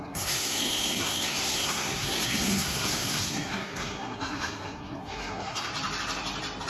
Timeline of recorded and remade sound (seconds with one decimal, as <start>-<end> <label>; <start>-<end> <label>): 0.0-5.7 remade; 5.7-6.7 recorded